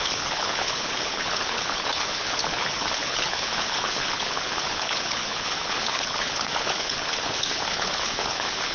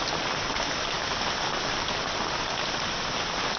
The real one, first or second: second